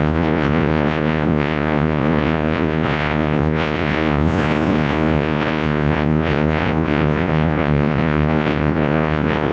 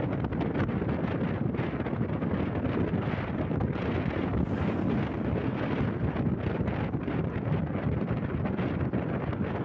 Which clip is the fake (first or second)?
first